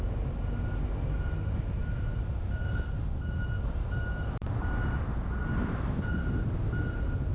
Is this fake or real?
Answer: real